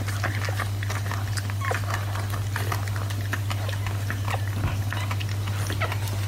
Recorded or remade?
recorded